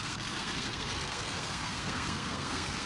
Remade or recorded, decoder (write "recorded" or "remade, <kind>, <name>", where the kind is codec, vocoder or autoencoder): remade, codec, SNAC